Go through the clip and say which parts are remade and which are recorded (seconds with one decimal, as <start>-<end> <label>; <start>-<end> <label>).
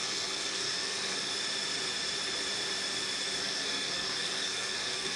0.0-1.3 remade; 1.3-3.4 recorded; 3.4-5.2 remade